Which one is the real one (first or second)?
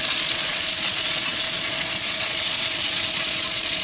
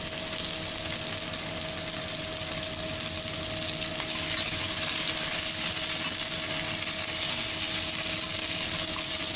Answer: second